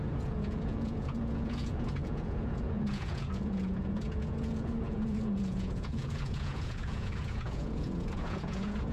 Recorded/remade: remade